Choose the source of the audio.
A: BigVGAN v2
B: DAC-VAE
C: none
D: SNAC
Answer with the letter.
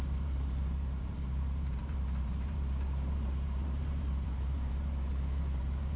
A